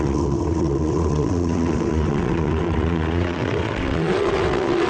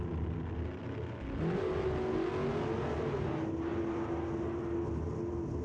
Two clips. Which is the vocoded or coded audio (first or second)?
first